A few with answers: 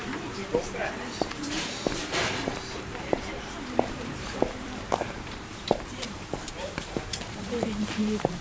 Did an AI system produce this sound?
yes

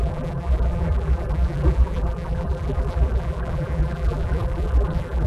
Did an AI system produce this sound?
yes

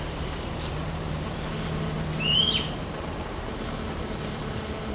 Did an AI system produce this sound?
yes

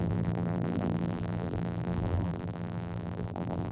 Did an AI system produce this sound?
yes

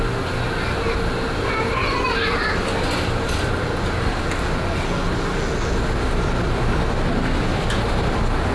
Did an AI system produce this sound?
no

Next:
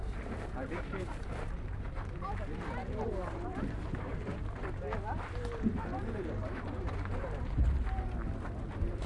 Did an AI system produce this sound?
yes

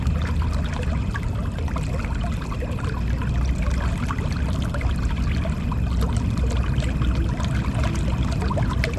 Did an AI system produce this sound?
no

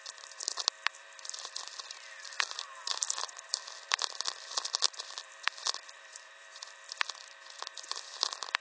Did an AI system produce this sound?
yes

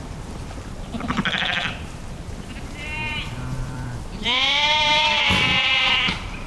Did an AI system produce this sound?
yes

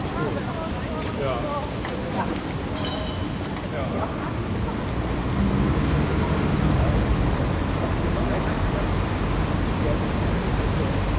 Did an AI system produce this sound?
no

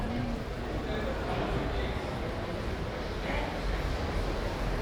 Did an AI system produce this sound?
no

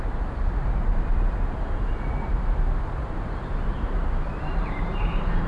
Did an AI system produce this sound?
yes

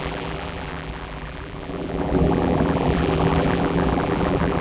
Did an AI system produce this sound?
yes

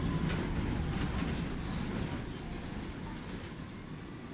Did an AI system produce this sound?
no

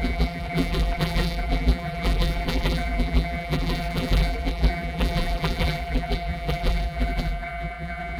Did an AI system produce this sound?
yes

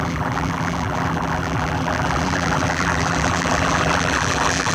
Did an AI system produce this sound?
yes